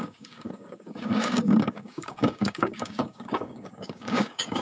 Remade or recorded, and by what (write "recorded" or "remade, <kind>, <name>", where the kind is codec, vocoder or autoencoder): remade, codec, DAC